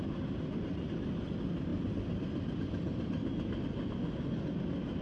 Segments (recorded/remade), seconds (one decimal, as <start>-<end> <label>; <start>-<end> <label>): 0.0-5.0 recorded